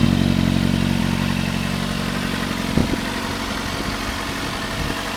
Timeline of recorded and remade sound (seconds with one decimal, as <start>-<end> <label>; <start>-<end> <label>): 0.0-5.2 recorded